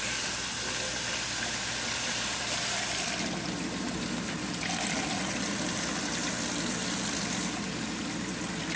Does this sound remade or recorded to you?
recorded